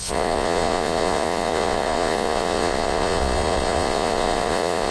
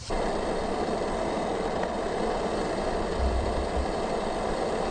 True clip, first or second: second